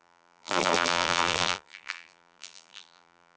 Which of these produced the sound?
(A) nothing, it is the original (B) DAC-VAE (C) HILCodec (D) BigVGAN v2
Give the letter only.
D